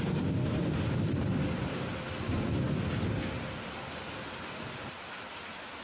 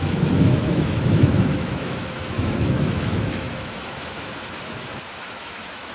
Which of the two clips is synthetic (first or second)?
second